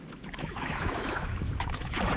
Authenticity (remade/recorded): remade